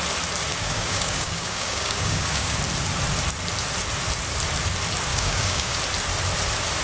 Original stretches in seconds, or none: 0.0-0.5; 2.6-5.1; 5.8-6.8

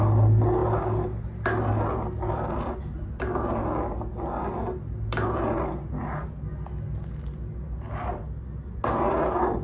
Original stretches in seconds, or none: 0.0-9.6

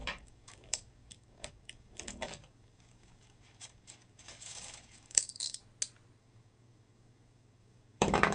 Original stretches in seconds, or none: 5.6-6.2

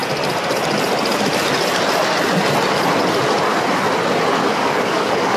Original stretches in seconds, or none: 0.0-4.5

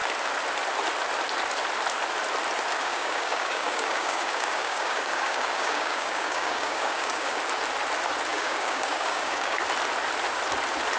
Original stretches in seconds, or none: 0.0-2.8; 7.4-8.3; 9.6-11.0

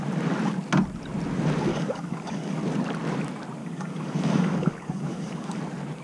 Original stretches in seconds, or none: 0.0-1.7; 2.6-3.6; 5.6-6.0